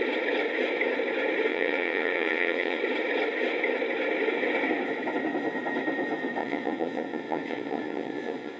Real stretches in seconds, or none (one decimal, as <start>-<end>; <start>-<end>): 0.0-1.5; 2.8-6.4